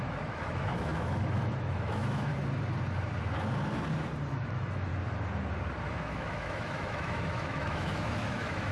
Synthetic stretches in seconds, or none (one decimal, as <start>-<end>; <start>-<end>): 0.0-2.3; 4.3-4.9; 5.9-8.7